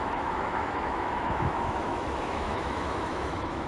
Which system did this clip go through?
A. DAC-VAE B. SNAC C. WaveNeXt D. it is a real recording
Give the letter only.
A